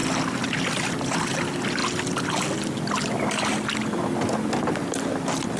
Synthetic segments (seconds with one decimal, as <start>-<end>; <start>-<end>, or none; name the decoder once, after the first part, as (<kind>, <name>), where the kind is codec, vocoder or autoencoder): none

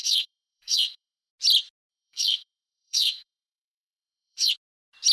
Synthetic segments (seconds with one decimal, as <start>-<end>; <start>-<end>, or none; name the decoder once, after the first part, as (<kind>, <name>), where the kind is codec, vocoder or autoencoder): 0.0-1.3 (codec, SNAC); 1.9-4.5

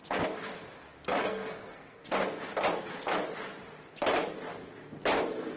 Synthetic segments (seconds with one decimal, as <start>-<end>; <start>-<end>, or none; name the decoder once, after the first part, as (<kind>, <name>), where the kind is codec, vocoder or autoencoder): 1.2-2.0 (codec, SNAC)

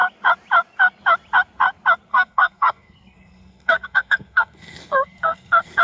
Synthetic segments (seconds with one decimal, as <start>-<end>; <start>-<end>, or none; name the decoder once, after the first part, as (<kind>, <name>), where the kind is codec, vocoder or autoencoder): 2.1-5.8 (codec, SNAC)

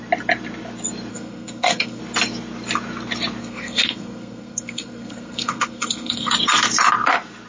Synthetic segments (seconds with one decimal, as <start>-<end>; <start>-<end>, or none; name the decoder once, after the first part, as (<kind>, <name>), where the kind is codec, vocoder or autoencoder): 1.1-2.0 (codec, SNAC); 3.4-6.3

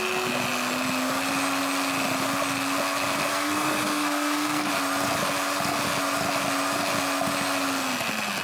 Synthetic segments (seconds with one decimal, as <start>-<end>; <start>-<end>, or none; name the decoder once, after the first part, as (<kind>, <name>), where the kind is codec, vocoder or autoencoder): 3.3-4.7 (codec, SNAC)

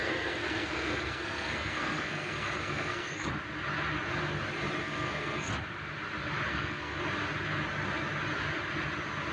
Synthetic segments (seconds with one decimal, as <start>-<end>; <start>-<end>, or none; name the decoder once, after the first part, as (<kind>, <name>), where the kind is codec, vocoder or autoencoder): 0.0-3.3 (codec, SNAC); 4.8-5.5; 6.5-7.0

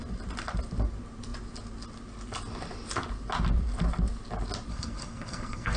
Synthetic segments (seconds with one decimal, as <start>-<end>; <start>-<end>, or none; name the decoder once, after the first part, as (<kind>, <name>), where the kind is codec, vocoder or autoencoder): 4.7-5.8 (codec, SNAC)